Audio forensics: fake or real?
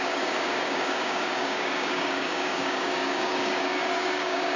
fake